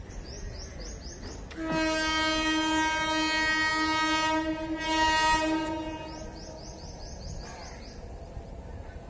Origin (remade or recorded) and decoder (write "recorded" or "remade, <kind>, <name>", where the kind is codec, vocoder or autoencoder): recorded